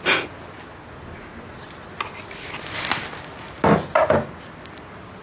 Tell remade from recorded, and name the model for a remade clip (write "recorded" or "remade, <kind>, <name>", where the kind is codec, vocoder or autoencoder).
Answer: recorded